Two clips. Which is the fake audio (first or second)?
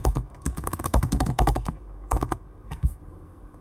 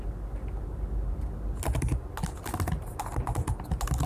first